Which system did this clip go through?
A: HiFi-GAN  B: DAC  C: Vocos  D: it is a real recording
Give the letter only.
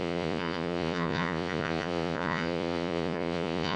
C